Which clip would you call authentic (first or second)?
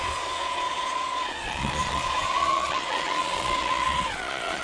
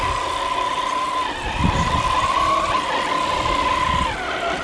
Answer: second